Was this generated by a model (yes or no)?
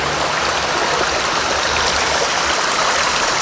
no